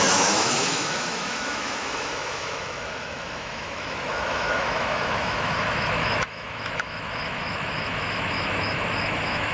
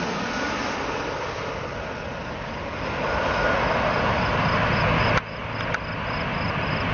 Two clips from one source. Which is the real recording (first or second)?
second